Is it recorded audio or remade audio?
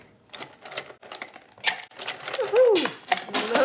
recorded